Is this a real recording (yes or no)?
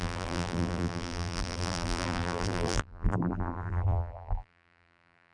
no